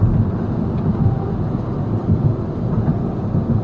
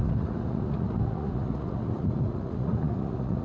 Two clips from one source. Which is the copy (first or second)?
second